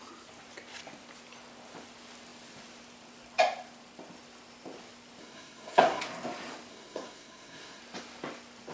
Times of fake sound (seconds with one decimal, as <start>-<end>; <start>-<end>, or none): 5.2-6.0; 6.7-7.8